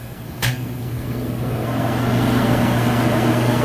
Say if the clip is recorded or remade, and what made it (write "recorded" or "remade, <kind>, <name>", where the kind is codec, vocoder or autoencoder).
remade, codec, SNAC